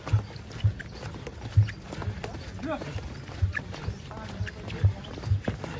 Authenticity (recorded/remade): recorded